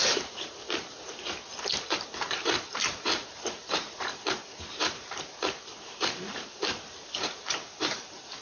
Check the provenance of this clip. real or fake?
fake